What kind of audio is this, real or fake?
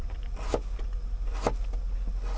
real